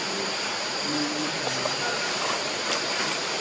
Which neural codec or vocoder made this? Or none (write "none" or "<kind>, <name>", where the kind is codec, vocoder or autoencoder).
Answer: vocoder, BigVGAN v2